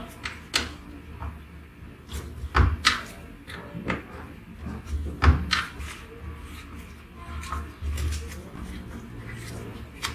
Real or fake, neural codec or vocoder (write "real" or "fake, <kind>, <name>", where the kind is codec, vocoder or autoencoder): real